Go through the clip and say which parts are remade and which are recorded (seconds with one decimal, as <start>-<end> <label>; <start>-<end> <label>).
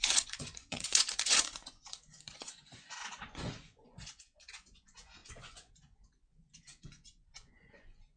0.0-8.2 remade